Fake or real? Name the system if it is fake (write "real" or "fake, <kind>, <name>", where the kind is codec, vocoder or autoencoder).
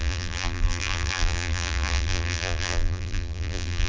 fake, vocoder, BigVGAN v2